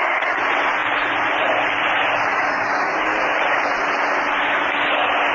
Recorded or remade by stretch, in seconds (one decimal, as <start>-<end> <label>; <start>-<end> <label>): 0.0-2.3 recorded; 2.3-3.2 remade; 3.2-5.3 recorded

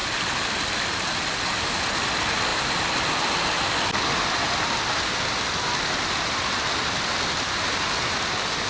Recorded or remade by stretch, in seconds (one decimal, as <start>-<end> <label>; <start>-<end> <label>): 0.0-8.7 recorded

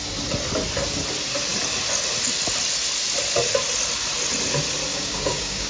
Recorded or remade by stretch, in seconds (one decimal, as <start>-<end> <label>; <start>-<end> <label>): 0.0-4.9 recorded; 4.9-5.7 remade

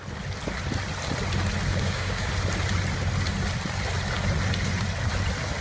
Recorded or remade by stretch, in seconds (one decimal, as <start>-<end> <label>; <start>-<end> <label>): 0.0-1.7 recorded; 1.7-2.3 remade; 2.3-5.6 recorded

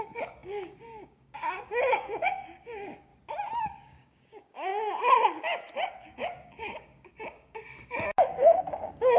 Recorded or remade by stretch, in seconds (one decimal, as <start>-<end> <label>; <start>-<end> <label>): 0.0-3.1 remade; 3.1-3.6 recorded; 3.6-4.7 remade; 4.7-5.9 recorded; 5.9-9.2 remade